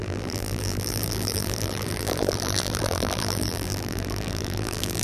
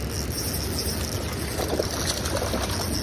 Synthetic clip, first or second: first